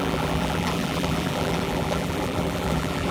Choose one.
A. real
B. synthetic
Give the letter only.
B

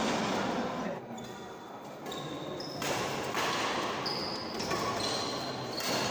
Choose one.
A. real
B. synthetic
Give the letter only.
A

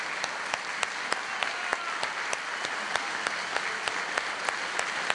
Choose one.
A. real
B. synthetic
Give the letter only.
A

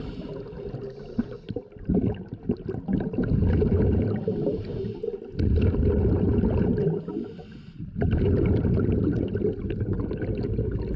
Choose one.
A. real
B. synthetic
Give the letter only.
A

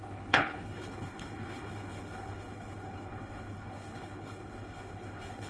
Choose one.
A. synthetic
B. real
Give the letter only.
A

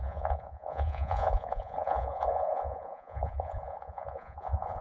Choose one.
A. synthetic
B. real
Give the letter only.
A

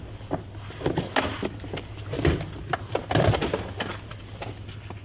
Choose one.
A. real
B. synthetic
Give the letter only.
A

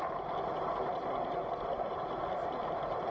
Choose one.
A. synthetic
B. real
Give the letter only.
B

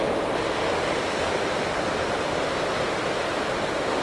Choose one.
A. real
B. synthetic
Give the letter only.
A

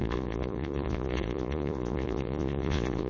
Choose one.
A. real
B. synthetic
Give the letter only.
B